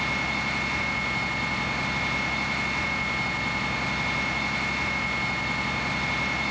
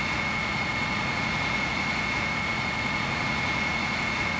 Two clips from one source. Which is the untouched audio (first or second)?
first